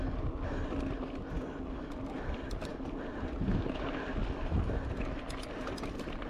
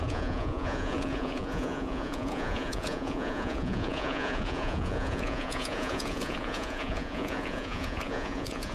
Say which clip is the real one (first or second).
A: first